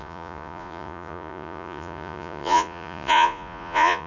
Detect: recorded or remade remade